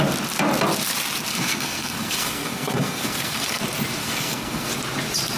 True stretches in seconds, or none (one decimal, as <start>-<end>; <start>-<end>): 0.0-1.3; 3.6-4.0; 4.7-5.4